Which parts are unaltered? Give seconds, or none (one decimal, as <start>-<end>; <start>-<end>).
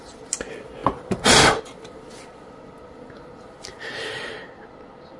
0.0-5.2